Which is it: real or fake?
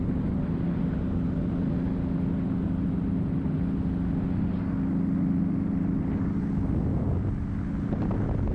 real